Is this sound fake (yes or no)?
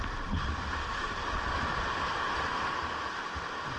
no